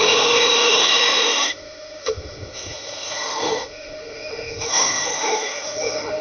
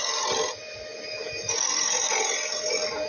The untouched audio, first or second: second